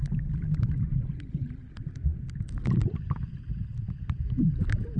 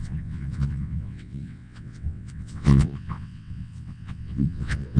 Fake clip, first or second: second